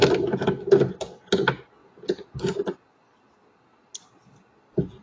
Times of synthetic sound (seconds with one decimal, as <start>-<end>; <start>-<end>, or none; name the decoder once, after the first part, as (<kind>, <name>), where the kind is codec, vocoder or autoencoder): 1.8-2.6 (vocoder, Vocos)